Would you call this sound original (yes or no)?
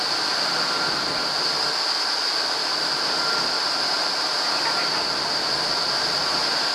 yes